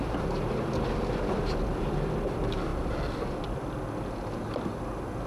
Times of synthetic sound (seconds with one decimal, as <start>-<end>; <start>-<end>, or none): none